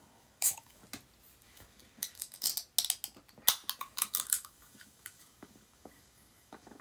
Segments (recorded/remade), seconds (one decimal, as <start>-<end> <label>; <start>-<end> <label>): 0.0-0.8 remade; 0.8-1.4 recorded; 1.4-2.5 remade; 2.5-3.8 recorded; 3.8-6.8 remade